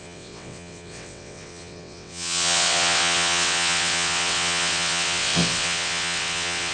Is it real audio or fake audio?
fake